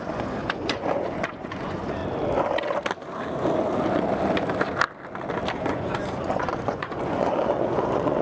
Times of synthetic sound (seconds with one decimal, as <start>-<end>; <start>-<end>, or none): 0.0-2.0; 5.6-8.2